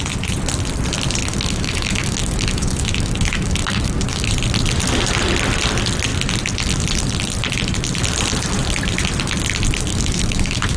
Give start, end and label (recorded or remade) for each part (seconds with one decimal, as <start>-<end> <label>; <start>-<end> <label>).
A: 0.0-1.2 recorded; 1.2-4.3 remade; 4.3-9.9 recorded; 9.9-10.8 remade